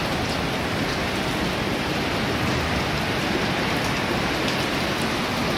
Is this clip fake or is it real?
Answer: real